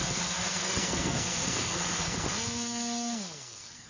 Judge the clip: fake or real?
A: fake